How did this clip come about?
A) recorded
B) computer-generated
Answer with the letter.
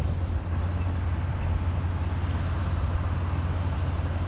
A